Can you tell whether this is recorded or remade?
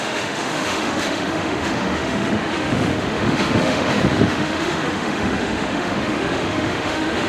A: remade